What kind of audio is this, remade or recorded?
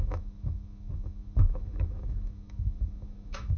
remade